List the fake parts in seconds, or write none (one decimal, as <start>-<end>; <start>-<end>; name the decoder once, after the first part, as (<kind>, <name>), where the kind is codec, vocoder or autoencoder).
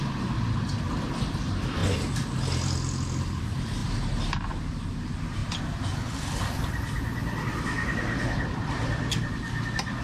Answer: none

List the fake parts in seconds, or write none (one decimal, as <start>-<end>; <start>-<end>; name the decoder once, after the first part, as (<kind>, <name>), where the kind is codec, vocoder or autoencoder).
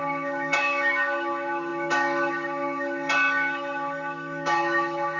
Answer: 0.0-5.2 (autoencoder, DAC-VAE)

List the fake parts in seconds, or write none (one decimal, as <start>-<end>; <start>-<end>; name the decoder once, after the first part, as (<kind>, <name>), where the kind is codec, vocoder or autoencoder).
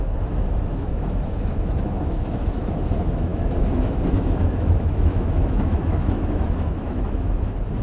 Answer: 0.0-7.8 (autoencoder, DAC-VAE)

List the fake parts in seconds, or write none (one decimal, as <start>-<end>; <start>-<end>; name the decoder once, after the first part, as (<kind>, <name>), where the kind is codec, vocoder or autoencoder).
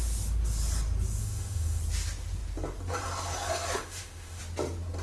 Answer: 1.2-1.8 (autoencoder, DAC-VAE); 3.8-4.4